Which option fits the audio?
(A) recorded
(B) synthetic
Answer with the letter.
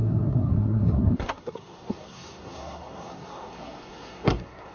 B